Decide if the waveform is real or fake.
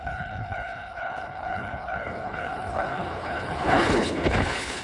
fake